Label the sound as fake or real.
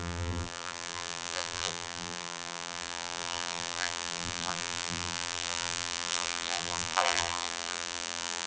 fake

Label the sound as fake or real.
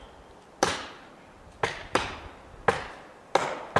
real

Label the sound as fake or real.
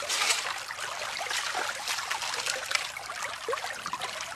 real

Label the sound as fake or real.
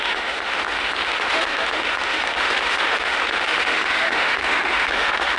fake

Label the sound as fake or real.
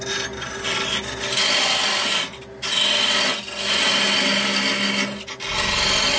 real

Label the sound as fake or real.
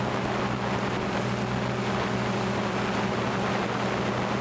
real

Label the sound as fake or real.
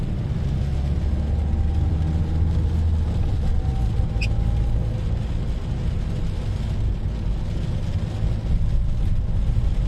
real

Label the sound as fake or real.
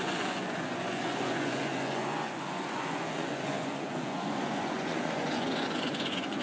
fake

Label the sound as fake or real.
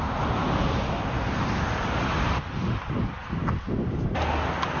real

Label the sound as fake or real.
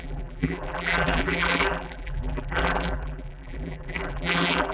fake